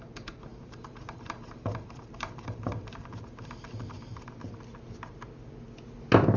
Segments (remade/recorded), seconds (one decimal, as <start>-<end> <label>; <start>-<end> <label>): 0.0-0.5 recorded; 0.5-4.3 remade; 4.3-6.4 recorded